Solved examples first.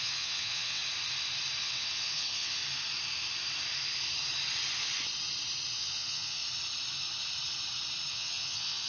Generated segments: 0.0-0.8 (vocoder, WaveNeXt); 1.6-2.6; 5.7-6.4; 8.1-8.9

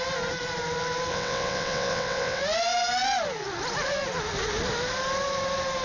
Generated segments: 1.1-2.4 (vocoder, WaveNeXt)

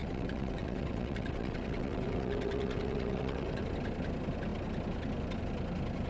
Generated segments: 0.0-3.6 (vocoder, WaveNeXt)

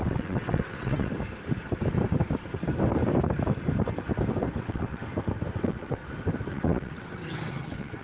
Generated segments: 0.0-1.1 (vocoder, WaveNeXt); 4.6-5.0; 5.5-6.0; 6.5-8.0

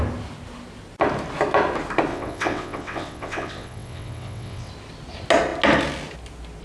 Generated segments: 2.1-4.7 (vocoder, WaveNeXt)

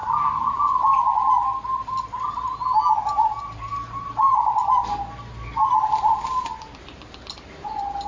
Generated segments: none